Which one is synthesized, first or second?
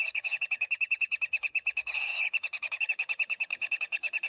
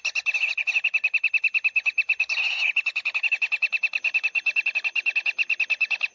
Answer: first